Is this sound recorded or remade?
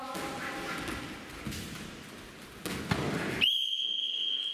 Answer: recorded